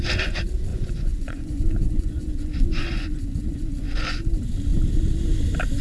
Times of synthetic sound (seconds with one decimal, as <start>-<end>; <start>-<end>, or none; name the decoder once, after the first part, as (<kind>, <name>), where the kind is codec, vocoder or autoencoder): 0.7-4.2 (vocoder, Vocos)